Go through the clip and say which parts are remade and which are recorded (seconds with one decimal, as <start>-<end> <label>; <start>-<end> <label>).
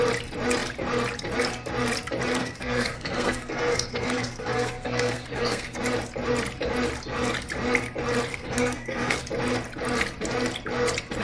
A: 0.0-2.4 recorded; 2.4-5.8 remade; 5.8-8.3 recorded; 8.3-9.2 remade; 9.2-11.2 recorded